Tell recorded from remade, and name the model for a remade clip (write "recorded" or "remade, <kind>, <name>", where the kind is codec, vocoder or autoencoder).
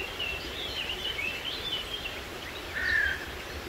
remade, vocoder, BigVGAN v2